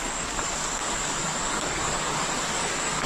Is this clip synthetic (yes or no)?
yes